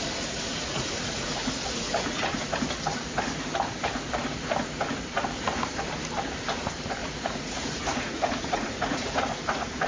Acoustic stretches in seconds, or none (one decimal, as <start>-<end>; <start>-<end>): 0.0-0.5; 2.6-7.0